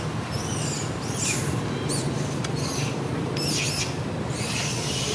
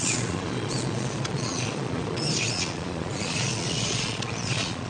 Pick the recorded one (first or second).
first